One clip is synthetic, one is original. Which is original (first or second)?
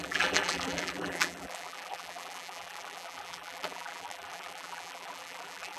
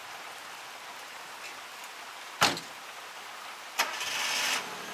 second